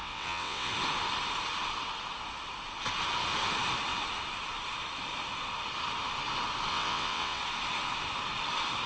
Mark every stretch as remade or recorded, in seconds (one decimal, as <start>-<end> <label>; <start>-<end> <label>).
0.0-0.7 remade; 0.7-6.7 recorded; 6.7-7.4 remade; 7.4-8.9 recorded